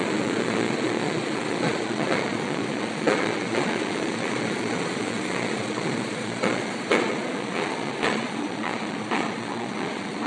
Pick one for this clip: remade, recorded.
remade